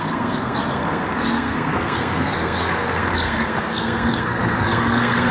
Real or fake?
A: fake